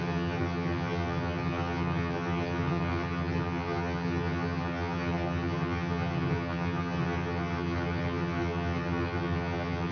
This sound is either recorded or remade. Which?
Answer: remade